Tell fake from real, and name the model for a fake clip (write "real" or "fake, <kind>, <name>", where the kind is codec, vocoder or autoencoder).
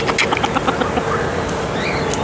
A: real